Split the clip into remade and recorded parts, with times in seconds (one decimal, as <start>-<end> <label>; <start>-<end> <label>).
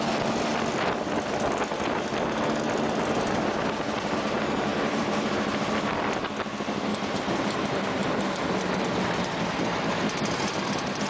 0.0-4.7 recorded; 4.7-5.3 remade; 5.3-11.1 recorded